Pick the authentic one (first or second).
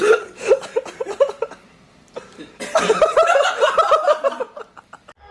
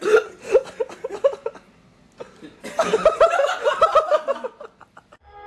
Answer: second